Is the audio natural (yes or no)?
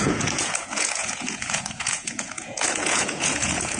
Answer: no